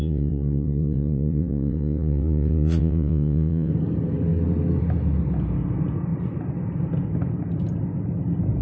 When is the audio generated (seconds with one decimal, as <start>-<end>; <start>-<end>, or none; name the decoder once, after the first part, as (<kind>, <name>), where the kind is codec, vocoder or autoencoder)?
0.0-3.7 (vocoder, WaveNeXt)